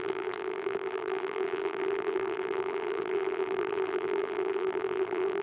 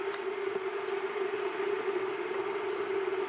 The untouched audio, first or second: second